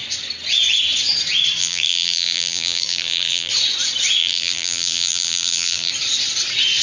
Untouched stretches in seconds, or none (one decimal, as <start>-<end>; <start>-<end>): 0.0-1.6; 3.5-4.2; 5.9-6.8